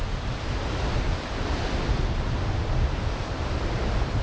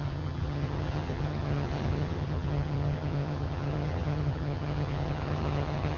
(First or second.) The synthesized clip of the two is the second